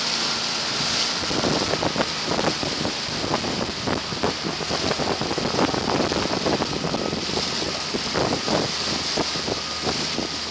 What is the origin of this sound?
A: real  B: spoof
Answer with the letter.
A